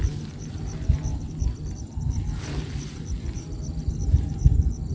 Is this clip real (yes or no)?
yes